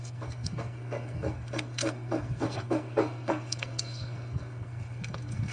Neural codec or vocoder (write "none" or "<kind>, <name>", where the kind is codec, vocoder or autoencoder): codec, SNAC